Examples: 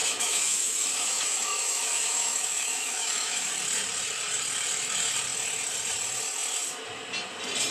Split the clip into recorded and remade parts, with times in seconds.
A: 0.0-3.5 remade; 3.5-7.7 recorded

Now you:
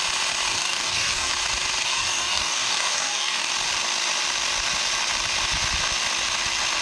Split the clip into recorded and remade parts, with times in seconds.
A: 0.0-0.5 recorded; 0.5-1.3 remade; 1.3-1.8 recorded; 1.8-3.5 remade; 3.5-6.8 recorded

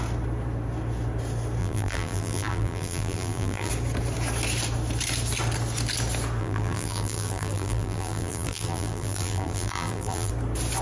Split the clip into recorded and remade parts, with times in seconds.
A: 0.0-1.6 recorded; 1.6-3.7 remade; 3.7-6.4 recorded; 6.4-10.3 remade; 10.3-10.8 recorded

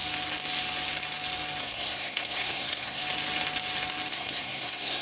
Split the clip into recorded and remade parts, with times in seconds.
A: 0.0-1.6 recorded; 1.6-3.0 remade; 3.0-4.1 recorded; 4.1-5.0 remade